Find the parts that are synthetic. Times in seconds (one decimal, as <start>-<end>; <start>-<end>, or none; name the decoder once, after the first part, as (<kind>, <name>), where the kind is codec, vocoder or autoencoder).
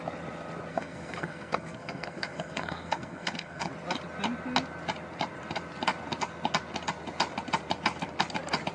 0.7-3.7 (codec, SNAC)